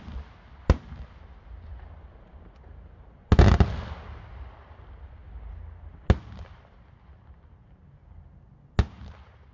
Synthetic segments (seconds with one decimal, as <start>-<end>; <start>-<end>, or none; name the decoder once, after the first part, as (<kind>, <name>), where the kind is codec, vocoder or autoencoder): none